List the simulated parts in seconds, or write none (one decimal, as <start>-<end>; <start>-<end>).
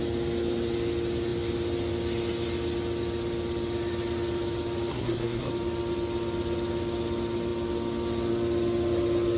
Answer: 4.9-5.5